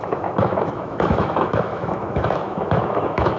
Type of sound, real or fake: fake